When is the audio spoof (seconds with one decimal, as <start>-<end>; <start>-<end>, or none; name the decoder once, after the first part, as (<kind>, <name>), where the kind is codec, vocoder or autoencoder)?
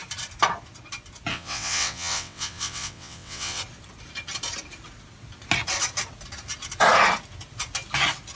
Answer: 1.3-3.6 (vocoder, WaveNeXt)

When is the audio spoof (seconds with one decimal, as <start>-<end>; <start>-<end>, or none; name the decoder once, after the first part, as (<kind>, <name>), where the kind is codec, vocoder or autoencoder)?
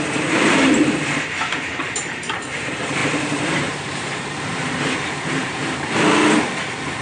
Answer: 0.0-5.6 (vocoder, BigVGAN v2)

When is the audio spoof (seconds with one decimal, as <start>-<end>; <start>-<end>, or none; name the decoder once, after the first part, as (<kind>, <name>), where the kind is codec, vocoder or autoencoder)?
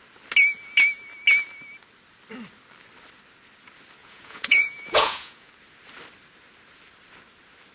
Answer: 4.0-5.5 (vocoder, Vocos)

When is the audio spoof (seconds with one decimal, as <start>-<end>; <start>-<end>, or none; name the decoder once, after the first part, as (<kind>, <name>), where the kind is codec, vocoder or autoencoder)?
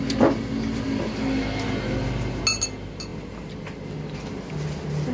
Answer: none